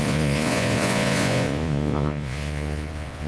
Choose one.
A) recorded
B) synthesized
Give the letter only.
B